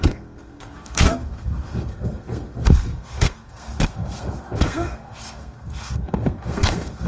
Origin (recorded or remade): remade